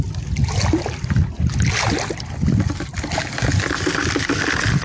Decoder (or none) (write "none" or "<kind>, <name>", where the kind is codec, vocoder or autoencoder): none